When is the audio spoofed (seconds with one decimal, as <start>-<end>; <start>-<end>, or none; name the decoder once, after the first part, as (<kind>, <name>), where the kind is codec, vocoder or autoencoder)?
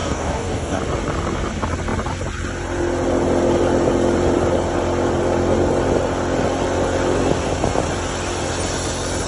0.0-0.8 (codec, DAC)